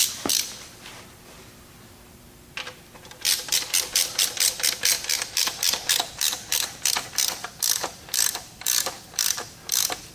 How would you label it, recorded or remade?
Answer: remade